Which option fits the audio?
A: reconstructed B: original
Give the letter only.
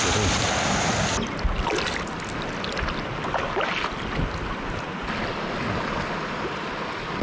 B